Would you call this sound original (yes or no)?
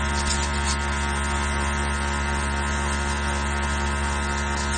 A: yes